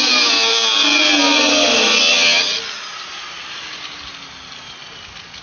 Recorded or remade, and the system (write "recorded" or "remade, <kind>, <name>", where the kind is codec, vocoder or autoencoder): recorded